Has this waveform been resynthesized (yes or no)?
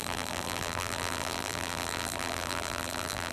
yes